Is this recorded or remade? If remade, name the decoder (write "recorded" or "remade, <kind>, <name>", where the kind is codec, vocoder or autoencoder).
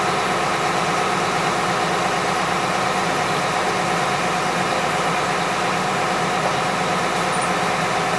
recorded